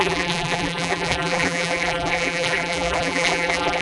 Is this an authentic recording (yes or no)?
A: no